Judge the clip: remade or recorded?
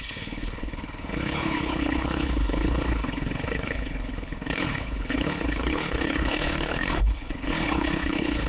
remade